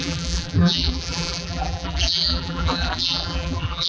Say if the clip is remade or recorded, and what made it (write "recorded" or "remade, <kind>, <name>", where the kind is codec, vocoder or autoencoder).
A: remade, vocoder, BigVGAN v2